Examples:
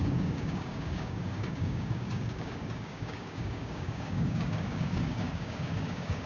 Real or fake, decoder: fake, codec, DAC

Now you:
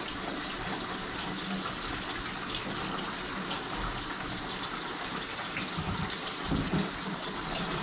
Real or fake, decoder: real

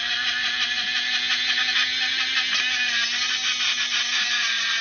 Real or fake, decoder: real